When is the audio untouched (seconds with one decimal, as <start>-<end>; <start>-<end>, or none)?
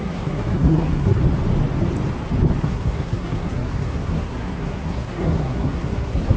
1.2-2.6